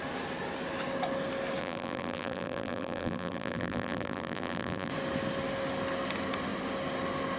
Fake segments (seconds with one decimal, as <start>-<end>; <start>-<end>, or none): 1.6-4.9